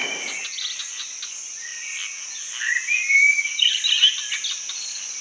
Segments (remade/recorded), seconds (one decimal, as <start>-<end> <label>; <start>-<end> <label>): 0.0-5.2 recorded